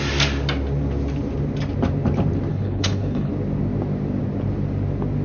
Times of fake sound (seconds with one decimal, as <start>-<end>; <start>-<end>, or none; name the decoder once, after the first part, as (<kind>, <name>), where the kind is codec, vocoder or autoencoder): 2.5-3.3 (codec, HILCodec)